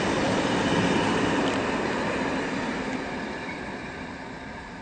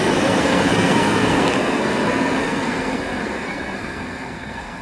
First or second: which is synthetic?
second